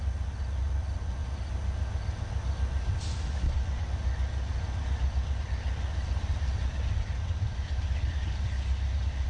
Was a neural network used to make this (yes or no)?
no